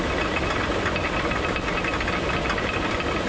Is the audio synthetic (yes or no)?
no